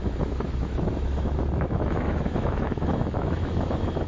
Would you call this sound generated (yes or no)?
yes